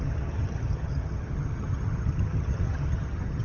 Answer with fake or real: fake